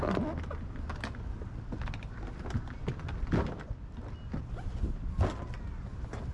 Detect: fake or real real